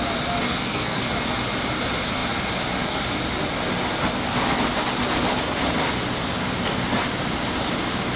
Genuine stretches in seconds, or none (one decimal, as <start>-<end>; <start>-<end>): 0.0-0.5; 1.0-8.2